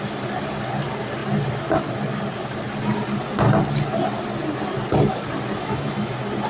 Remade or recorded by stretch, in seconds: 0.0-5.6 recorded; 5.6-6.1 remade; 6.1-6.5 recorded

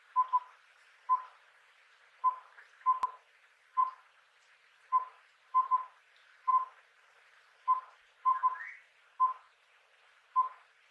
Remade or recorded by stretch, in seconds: 0.0-8.4 remade; 8.4-10.9 recorded

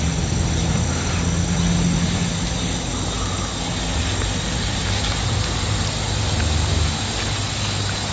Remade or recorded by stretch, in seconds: 0.0-8.1 recorded

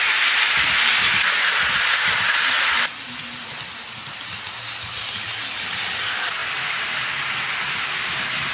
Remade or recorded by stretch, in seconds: 0.0-6.4 recorded; 6.4-7.1 remade; 7.1-8.5 recorded

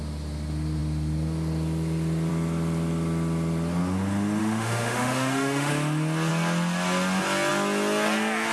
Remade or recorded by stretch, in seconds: 0.0-4.4 recorded; 4.4-5.7 remade; 5.7-8.5 recorded

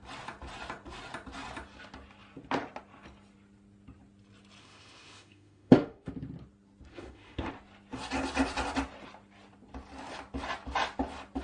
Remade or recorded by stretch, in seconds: 0.0-4.6 recorded; 4.6-6.1 remade; 6.1-6.9 recorded; 6.9-7.5 remade; 7.5-11.4 recorded